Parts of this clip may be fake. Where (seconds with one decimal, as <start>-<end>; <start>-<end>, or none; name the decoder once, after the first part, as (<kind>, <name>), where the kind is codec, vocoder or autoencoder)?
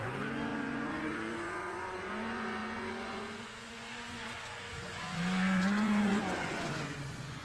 0.0-7.4 (vocoder, Vocos)